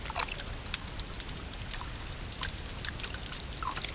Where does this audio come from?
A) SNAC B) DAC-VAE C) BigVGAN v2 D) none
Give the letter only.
D